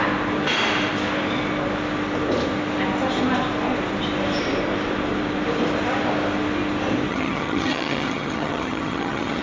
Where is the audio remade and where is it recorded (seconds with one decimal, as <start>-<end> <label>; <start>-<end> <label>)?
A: 0.0-7.1 recorded; 7.1-9.4 remade